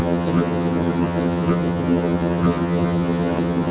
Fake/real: fake